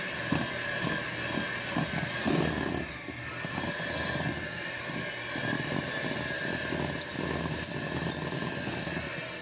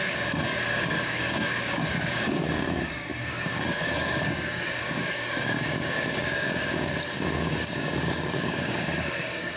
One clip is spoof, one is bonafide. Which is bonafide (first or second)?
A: first